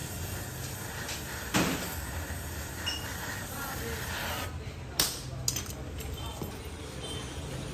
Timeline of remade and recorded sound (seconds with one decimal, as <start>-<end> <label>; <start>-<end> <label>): 0.0-7.7 recorded